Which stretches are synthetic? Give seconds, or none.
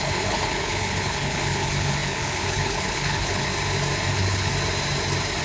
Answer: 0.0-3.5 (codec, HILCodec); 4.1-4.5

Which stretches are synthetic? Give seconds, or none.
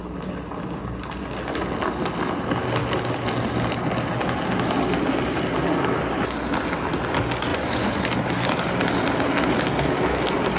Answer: 7.5-8.0 (vocoder, Vocos)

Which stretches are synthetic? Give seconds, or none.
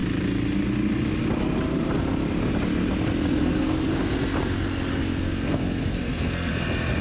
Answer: 3.4-3.9 (codec, SNAC); 5.0-6.5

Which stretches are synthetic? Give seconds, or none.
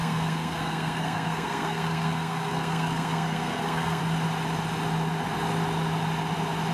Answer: 0.0-4.0 (codec, SNAC)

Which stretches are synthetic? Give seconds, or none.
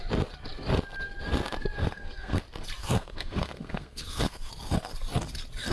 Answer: 1.8-2.4 (codec, SNAC); 2.8-4.5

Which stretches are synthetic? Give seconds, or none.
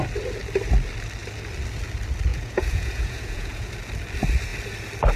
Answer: 2.3-3.7 (vocoder, Vocos)